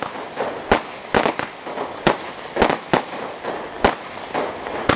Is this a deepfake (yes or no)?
no